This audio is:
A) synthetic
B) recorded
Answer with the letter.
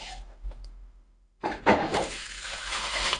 A